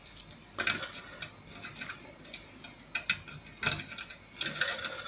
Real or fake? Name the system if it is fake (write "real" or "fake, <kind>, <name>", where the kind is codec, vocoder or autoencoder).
real